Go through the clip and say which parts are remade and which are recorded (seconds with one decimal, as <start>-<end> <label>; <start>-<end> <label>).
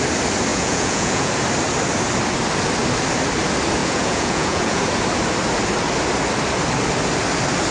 0.0-0.5 recorded; 0.5-1.3 remade; 1.3-3.8 recorded; 3.8-4.8 remade; 4.8-7.7 recorded